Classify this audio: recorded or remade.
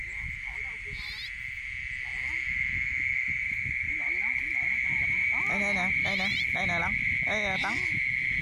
recorded